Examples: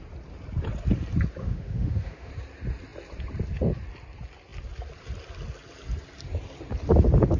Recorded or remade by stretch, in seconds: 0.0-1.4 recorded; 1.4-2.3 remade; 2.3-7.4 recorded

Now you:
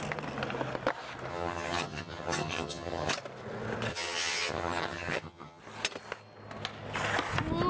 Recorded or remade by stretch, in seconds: 0.0-1.3 recorded; 1.3-3.1 remade; 3.1-3.9 recorded; 3.9-5.6 remade; 5.6-7.7 recorded

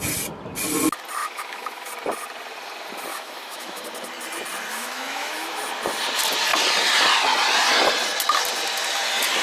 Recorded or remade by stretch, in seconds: 0.0-1.2 recorded; 1.2-1.9 remade; 1.9-3.1 recorded; 3.1-3.8 remade; 3.8-4.7 recorded; 4.7-5.6 remade; 5.6-9.4 recorded

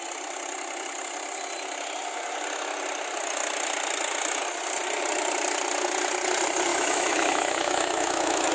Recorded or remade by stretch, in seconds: 0.0-6.7 recorded; 6.7-8.5 remade

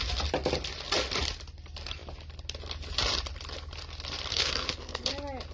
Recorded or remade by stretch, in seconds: 0.0-4.3 recorded; 4.3-5.1 remade; 5.1-5.5 recorded